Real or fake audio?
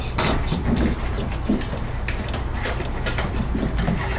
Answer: real